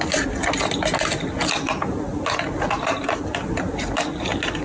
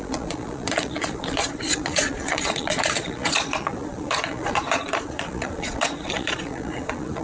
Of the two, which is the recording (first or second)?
first